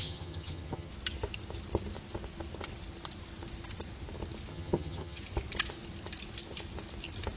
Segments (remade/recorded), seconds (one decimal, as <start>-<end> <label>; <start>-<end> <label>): 0.0-0.9 remade; 0.9-4.5 recorded; 4.5-5.2 remade; 5.2-7.4 recorded